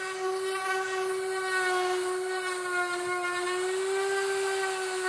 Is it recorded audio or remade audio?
recorded